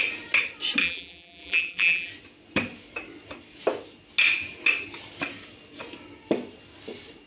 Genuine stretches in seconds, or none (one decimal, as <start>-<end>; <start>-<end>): 0.0-0.8; 2.1-7.3